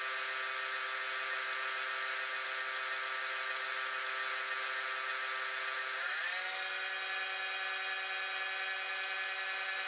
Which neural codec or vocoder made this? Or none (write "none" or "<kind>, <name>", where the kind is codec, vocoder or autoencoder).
none